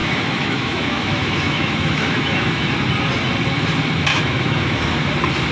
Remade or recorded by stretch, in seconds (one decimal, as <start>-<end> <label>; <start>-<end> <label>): 0.0-2.7 remade; 2.7-4.1 recorded; 4.1-5.1 remade; 5.1-5.5 recorded